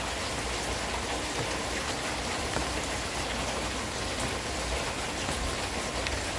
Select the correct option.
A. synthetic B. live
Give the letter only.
B